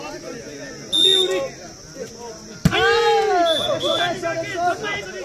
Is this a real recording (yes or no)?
yes